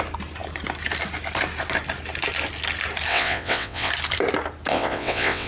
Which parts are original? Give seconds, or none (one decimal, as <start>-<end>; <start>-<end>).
0.0-3.1; 3.9-4.7